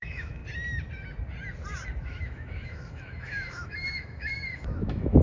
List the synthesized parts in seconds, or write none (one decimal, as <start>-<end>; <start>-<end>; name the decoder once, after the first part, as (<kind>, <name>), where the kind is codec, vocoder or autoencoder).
0.0-0.4 (autoencoder, DAC-VAE); 2.0-5.2